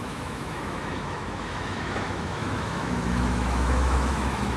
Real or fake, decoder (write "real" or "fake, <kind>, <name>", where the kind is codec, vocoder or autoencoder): fake, autoencoder, DAC-VAE